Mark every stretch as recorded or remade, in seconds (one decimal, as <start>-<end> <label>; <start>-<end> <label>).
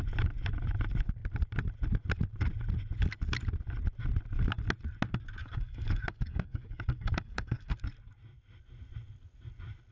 0.0-5.4 recorded; 5.4-7.7 remade; 7.7-9.9 recorded